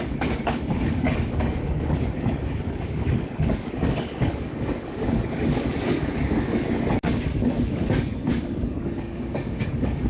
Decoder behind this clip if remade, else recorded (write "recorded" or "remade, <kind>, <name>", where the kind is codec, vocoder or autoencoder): remade, codec, DAC